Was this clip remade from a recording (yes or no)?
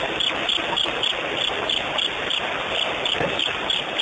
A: no